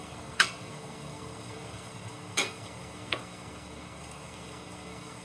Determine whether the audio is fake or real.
fake